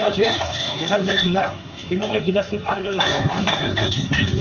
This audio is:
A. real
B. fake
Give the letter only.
B